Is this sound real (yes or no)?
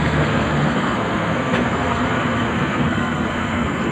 no